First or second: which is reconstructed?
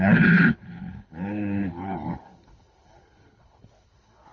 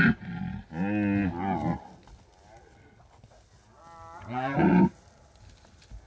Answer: first